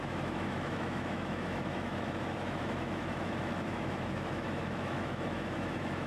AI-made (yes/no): yes